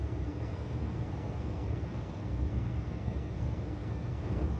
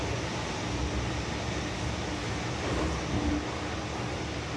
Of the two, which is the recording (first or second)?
second